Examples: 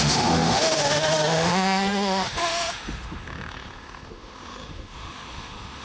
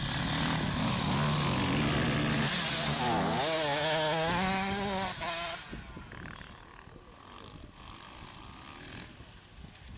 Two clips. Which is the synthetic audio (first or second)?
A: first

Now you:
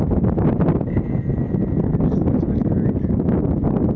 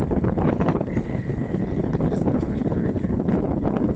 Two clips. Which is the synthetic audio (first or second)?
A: second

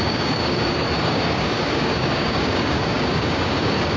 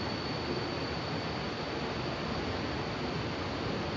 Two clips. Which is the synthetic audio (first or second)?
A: first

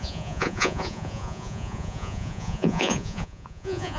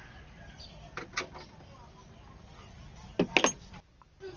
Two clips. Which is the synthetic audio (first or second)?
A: first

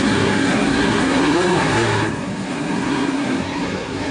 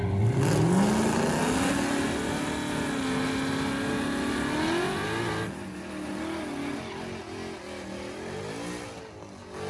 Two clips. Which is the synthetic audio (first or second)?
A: first